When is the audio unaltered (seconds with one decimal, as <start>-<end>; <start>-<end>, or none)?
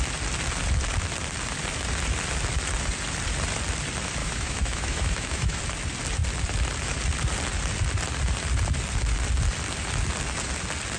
0.0-4.2; 5.6-11.0